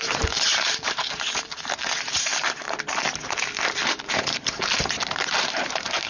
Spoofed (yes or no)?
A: yes